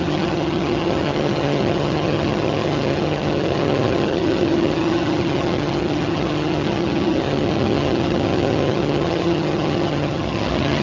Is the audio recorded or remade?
remade